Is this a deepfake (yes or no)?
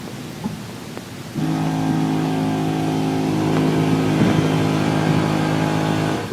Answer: no